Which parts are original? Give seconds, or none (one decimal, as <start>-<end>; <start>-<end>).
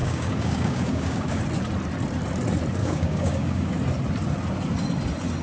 1.4-2.8; 3.7-5.4